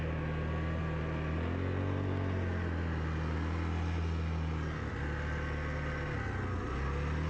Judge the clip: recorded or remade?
recorded